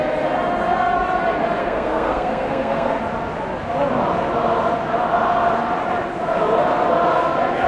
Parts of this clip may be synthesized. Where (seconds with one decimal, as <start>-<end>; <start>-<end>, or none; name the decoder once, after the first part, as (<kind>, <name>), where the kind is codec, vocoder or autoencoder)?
1.6-3.0 (codec, SNAC)